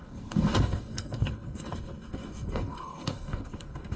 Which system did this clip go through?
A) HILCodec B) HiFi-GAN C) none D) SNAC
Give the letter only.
D